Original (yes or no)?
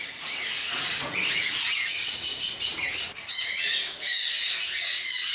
no